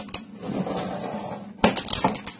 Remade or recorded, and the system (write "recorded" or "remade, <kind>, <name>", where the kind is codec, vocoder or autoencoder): recorded